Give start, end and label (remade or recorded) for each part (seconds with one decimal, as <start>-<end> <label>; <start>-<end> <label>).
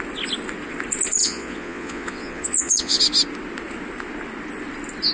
0.0-1.2 recorded; 1.2-3.0 remade; 3.0-5.1 recorded